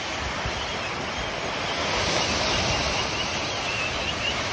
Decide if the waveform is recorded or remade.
recorded